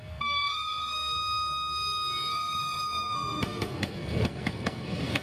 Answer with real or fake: fake